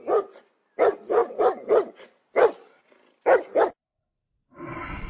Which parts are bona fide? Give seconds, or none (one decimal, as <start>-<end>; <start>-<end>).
0.0-5.1